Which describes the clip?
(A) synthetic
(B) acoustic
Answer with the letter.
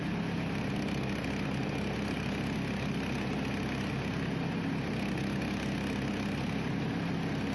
B